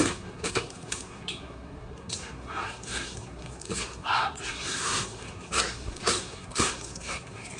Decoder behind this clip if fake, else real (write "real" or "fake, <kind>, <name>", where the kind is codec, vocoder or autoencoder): fake, codec, SNAC